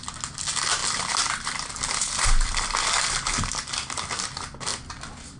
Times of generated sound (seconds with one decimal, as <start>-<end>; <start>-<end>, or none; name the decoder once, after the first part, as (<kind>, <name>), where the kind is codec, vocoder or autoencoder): none